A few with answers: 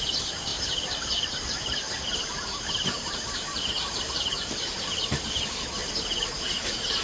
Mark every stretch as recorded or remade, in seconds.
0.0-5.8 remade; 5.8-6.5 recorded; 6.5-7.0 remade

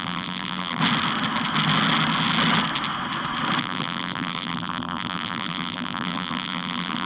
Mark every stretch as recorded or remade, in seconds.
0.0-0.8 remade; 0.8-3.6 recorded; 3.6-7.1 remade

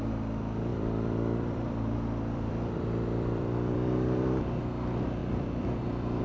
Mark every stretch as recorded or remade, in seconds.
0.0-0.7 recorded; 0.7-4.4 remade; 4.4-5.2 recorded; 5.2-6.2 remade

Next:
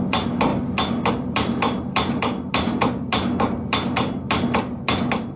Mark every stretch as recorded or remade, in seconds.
0.0-5.4 recorded